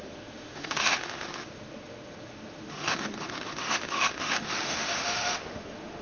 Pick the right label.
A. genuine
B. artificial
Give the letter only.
B